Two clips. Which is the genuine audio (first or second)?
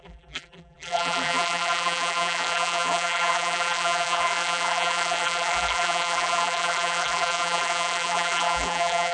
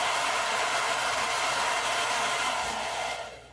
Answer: second